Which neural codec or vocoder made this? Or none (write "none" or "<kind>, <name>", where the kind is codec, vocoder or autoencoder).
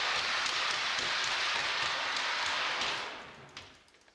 none